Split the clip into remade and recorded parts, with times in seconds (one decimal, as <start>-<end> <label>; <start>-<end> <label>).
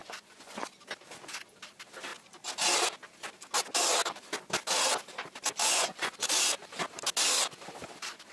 0.0-0.7 remade; 0.7-5.6 recorded; 5.6-6.3 remade; 6.3-8.3 recorded